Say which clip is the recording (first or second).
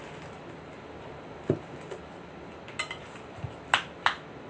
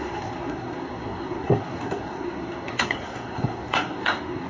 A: first